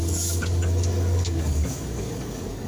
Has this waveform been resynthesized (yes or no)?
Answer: yes